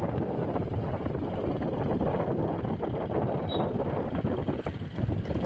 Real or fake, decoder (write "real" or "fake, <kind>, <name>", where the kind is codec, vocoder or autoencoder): real